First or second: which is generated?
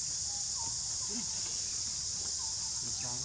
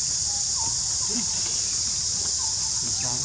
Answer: second